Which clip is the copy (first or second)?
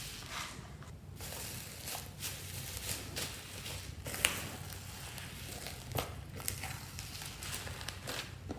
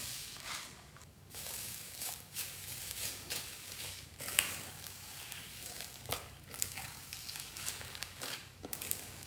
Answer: second